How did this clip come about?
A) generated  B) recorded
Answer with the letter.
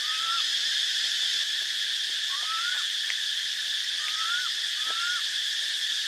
A